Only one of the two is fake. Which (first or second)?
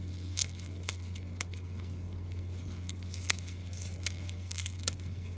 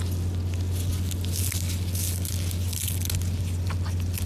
first